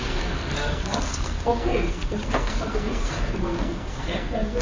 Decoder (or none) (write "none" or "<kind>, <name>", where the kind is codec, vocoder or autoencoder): codec, SNAC